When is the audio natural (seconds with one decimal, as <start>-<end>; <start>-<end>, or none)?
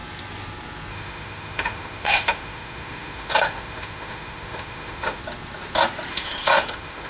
0.0-0.9; 5.2-6.1